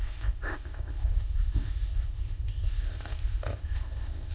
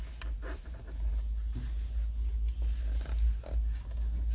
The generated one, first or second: first